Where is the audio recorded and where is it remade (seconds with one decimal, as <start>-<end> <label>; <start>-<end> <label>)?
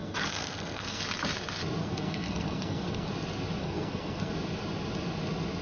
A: 0.0-1.0 remade; 1.0-1.8 recorded; 1.8-3.1 remade; 3.1-3.6 recorded; 3.6-4.3 remade; 4.3-5.6 recorded